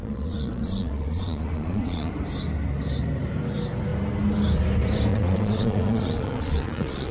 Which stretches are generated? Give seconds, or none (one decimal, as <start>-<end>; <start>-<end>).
0.0-2.1; 5.1-7.1